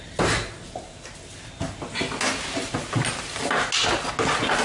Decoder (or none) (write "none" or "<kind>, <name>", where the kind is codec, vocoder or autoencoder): none